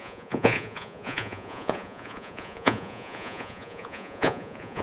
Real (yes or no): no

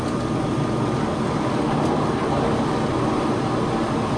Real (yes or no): yes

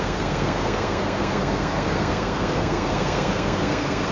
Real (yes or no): no